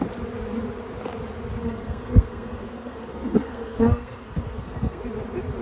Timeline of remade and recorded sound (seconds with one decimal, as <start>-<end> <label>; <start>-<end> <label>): 0.0-1.6 recorded; 1.6-5.0 remade; 5.0-5.6 recorded